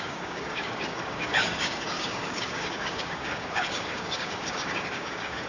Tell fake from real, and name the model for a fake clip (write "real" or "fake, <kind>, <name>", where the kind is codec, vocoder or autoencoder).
fake, codec, DAC